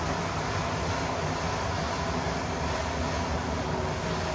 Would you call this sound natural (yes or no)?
yes